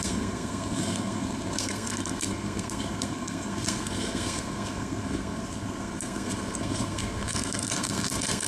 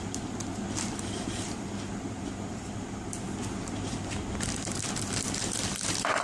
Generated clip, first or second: first